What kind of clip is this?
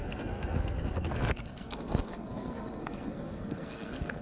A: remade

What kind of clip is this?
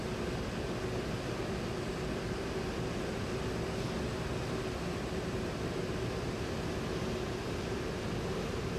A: recorded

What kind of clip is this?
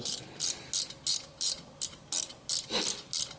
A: recorded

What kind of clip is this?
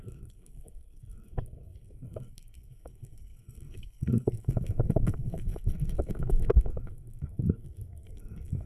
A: remade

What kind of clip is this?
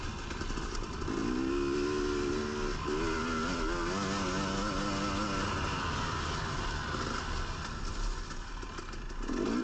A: recorded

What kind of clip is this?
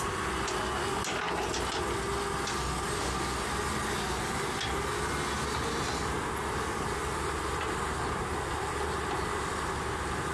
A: recorded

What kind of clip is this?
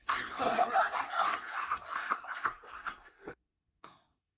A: remade